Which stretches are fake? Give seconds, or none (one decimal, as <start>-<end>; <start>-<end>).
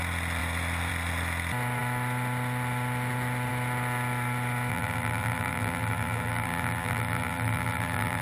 4.7-8.2